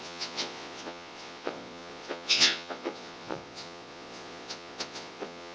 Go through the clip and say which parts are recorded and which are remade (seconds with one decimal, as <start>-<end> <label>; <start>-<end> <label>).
0.0-5.5 remade